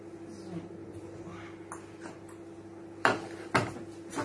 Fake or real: real